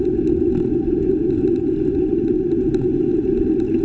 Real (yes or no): yes